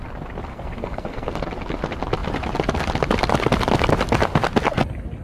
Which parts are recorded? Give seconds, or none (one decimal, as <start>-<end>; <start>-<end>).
0.0-0.5; 1.4-5.2